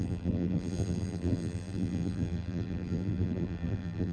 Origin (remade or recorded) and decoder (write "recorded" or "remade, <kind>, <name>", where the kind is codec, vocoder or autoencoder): remade, vocoder, BigVGAN v2